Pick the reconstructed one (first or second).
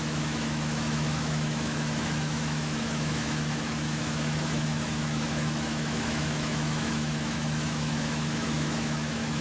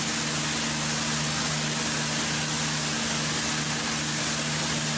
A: first